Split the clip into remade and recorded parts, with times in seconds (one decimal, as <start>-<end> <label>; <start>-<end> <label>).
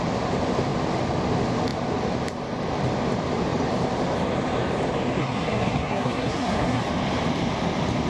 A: 0.0-5.2 recorded; 5.2-6.8 remade; 6.8-8.1 recorded